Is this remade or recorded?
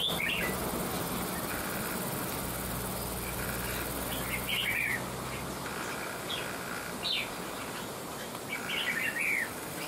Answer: recorded